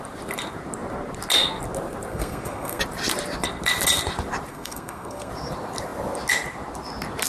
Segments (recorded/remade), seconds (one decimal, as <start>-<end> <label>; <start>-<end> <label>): 0.0-2.1 recorded; 2.1-2.8 remade; 2.8-4.5 recorded; 4.5-5.3 remade; 5.3-7.3 recorded